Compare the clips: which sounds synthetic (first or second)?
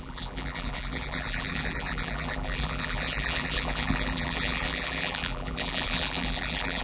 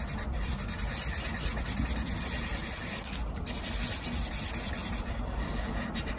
first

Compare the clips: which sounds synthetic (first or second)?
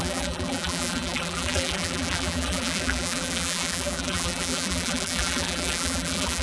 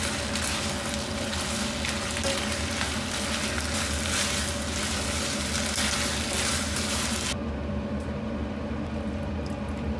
first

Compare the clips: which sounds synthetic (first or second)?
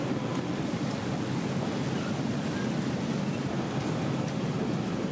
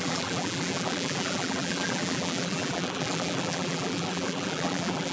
second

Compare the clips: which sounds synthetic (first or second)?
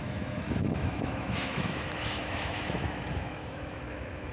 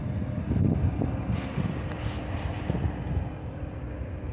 first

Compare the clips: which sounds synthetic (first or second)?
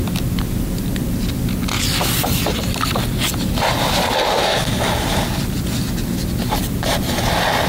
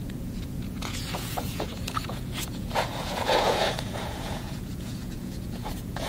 second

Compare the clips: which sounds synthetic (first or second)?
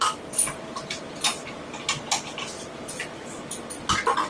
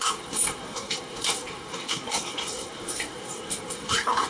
second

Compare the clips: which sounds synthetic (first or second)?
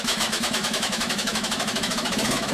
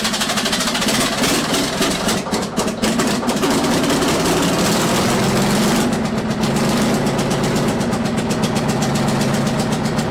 first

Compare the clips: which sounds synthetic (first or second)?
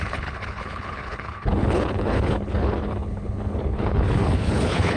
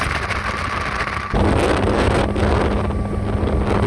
first